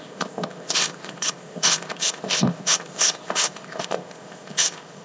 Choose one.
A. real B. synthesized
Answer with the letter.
B